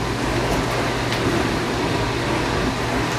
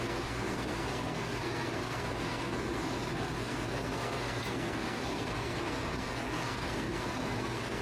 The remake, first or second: second